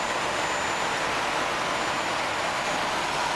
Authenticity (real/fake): real